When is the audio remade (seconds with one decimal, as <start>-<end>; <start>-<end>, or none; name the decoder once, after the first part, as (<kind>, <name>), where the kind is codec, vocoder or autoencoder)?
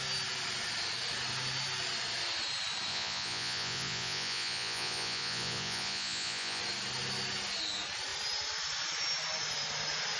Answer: 2.9-6.6 (vocoder, Vocos)